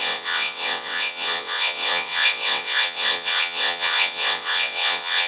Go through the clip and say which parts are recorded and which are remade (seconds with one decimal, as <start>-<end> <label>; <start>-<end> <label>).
0.0-5.3 remade